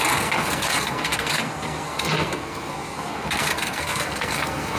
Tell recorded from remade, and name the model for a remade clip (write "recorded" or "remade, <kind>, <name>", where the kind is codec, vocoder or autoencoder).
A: remade, codec, SNAC